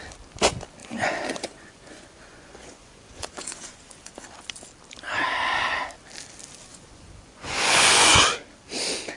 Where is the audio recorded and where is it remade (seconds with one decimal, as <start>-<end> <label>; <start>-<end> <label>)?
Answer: 0.0-0.8 recorded; 0.8-4.2 remade; 4.2-6.7 recorded; 6.7-8.2 remade; 8.2-9.2 recorded